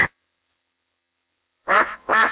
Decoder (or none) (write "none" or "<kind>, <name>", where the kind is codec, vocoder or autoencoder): vocoder, WaveNeXt